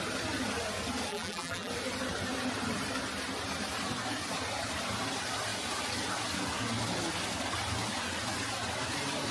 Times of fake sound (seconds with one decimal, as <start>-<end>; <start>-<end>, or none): 1.1-1.7

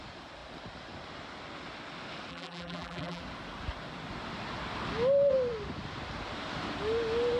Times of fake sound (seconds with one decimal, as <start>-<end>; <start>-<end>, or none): 2.3-3.2

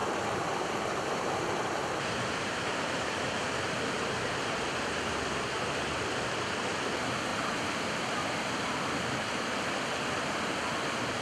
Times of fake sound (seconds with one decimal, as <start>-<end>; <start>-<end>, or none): 0.0-5.2

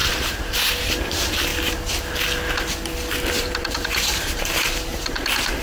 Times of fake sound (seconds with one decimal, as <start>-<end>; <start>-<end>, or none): 0.0-1.5; 3.4-5.6

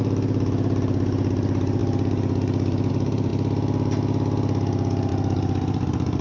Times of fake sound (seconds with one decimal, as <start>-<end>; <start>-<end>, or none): 0.0-3.3; 5.1-6.2

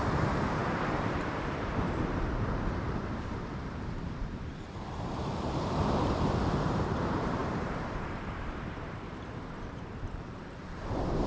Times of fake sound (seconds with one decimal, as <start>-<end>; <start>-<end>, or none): 0.0-11.3

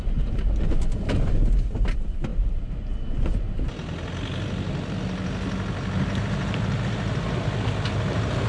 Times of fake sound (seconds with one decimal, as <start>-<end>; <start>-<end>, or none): none